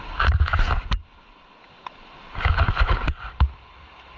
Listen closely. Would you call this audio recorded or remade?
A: recorded